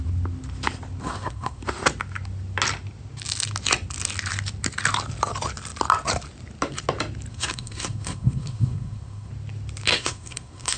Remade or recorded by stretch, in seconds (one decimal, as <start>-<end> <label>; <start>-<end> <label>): 0.0-1.0 recorded; 1.0-1.6 remade; 1.6-7.3 recorded; 7.3-9.3 remade; 9.3-9.9 recorded; 9.9-10.8 remade